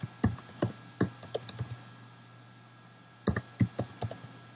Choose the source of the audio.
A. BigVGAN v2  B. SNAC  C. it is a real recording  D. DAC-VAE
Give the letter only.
C